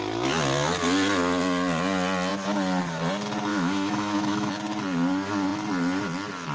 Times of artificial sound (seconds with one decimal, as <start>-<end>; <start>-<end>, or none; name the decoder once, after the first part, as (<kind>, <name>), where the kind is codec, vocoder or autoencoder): 3.5-4.5 (autoencoder, DAC-VAE)